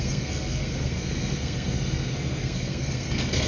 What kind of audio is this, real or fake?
fake